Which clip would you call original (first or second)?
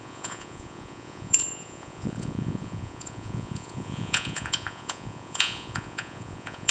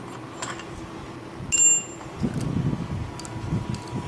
second